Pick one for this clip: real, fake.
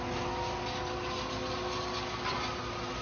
real